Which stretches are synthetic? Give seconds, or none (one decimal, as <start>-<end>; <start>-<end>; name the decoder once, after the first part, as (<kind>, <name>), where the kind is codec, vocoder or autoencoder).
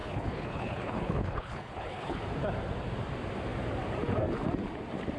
0.0-2.2 (codec, HILCodec)